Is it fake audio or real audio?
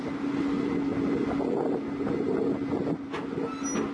real